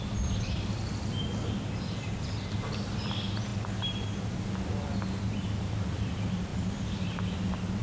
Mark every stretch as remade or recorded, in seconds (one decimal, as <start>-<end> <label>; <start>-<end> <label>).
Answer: 0.0-7.8 recorded

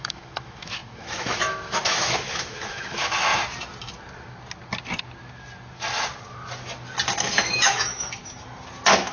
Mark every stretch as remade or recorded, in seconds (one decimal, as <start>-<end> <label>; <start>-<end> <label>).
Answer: 0.0-3.3 remade; 3.3-7.2 recorded; 7.2-8.2 remade; 8.2-9.1 recorded

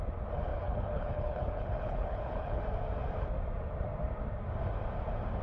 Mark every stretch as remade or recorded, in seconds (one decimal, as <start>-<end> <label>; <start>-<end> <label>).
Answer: 0.0-0.5 recorded; 0.5-2.6 remade; 2.6-5.4 recorded